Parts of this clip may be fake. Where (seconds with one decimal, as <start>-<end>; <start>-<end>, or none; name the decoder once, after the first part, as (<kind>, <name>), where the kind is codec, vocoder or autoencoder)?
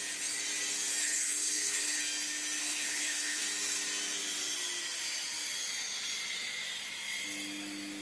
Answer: 1.0-2.0 (codec, HILCodec); 2.6-3.4